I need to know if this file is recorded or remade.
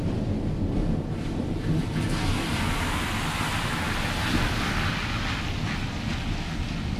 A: recorded